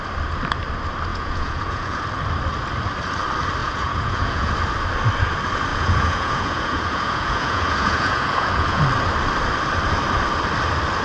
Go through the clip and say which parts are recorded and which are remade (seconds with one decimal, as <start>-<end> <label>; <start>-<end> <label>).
0.0-1.1 recorded; 1.1-2.0 remade; 2.0-3.6 recorded; 3.6-4.5 remade; 4.5-5.7 recorded; 5.7-8.8 remade; 8.8-11.0 recorded